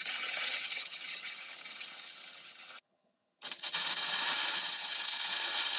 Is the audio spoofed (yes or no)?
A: yes